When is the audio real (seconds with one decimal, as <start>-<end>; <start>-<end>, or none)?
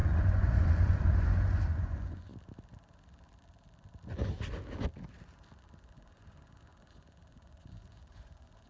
2.3-5.9